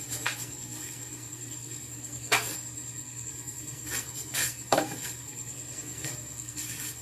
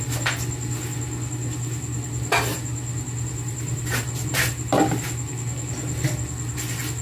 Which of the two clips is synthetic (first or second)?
first